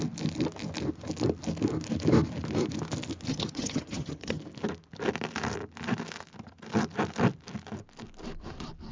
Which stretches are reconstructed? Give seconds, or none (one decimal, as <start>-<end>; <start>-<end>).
3.3-4.4